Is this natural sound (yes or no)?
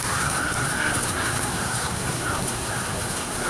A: no